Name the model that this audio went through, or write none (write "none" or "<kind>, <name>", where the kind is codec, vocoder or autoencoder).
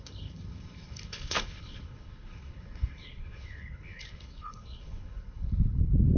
codec, HILCodec